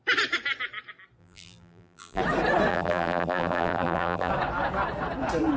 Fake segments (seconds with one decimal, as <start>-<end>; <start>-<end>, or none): 1.2-2.2; 2.7-4.3